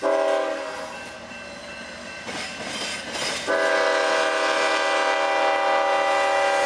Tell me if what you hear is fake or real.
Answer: real